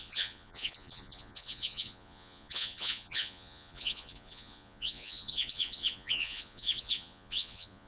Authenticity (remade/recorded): remade